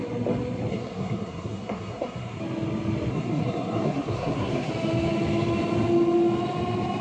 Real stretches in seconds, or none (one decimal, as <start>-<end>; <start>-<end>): 0.0-0.7; 2.4-3.1; 4.7-7.0